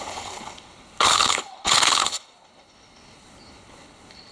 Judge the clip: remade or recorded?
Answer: remade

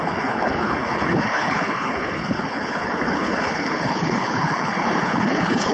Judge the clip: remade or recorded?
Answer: remade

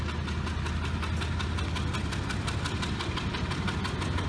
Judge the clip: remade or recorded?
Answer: recorded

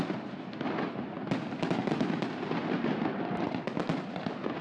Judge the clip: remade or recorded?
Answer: recorded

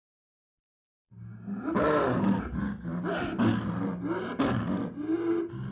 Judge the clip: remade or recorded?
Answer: recorded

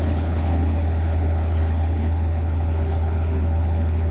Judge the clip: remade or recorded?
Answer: remade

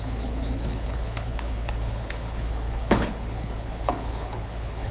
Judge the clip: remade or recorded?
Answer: remade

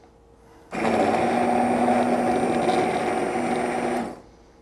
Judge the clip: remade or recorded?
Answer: recorded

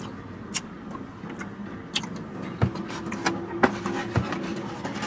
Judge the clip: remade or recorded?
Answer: recorded